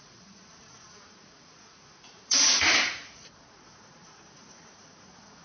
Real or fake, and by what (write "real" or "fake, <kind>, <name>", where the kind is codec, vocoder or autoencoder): fake, vocoder, Vocos